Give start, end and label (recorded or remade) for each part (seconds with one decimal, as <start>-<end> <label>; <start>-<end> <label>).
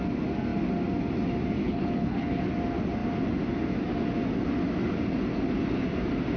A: 0.0-1.6 recorded; 1.6-2.4 remade; 2.4-6.4 recorded